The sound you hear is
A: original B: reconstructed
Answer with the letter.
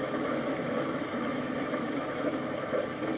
B